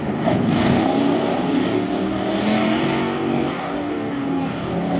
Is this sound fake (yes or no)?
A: yes